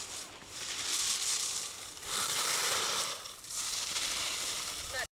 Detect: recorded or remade remade